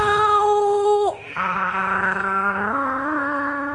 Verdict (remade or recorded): remade